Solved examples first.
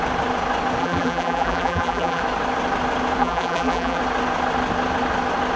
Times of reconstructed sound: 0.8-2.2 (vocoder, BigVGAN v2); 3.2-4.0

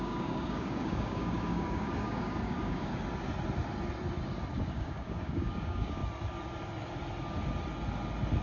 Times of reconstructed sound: 0.0-2.9 (codec, DAC); 4.7-6.0